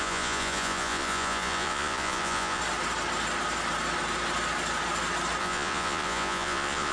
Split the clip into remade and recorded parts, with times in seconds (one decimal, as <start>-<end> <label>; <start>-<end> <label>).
0.0-2.6 remade; 2.6-5.4 recorded; 5.4-6.9 remade